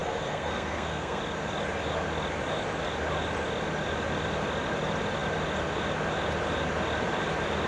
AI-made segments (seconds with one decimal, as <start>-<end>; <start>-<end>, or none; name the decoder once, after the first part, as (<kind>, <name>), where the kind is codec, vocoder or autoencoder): 0.0-1.2 (codec, SNAC)